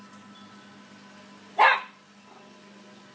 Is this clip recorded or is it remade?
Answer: recorded